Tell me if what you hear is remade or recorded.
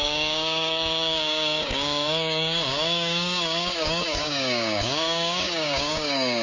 remade